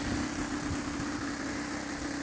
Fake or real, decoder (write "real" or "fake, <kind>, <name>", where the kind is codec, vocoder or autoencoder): real